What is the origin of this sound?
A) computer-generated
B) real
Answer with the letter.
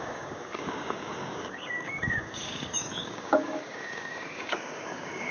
A